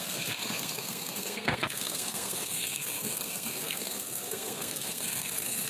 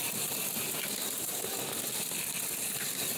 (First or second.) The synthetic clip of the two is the first